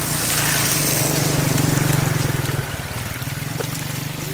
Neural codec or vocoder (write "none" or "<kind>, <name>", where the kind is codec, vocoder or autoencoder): none